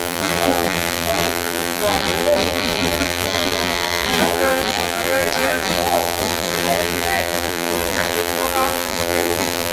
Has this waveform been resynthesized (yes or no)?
yes